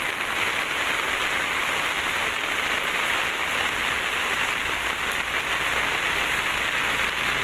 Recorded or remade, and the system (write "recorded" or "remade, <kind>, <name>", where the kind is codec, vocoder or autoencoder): recorded